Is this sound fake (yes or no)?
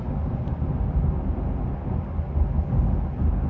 no